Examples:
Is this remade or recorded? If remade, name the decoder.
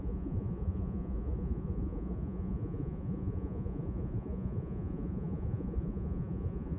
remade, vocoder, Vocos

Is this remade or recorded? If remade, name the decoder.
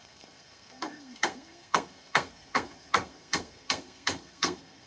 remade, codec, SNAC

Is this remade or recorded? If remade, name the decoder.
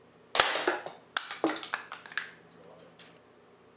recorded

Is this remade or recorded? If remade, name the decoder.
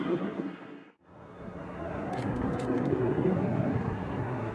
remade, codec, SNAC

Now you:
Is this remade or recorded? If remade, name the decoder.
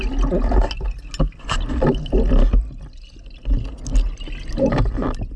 recorded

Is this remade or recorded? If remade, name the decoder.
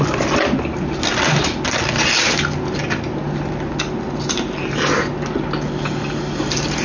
recorded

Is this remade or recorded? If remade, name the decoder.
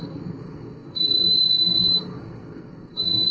remade, codec, SNAC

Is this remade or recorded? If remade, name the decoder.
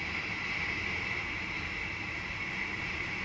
recorded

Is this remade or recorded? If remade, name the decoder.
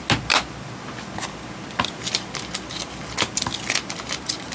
recorded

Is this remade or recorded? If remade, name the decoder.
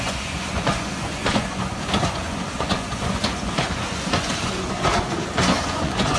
remade, vocoder, Vocos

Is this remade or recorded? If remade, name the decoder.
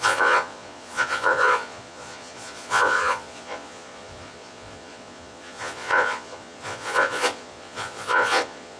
remade, vocoder, Vocos